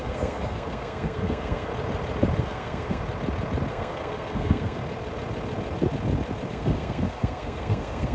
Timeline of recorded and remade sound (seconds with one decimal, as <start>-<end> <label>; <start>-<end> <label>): 0.0-1.7 remade; 1.7-2.4 recorded; 2.4-3.0 remade; 3.0-3.7 recorded; 3.7-4.8 remade; 4.8-6.5 recorded; 6.5-8.1 remade